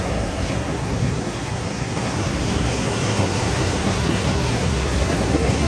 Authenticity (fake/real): fake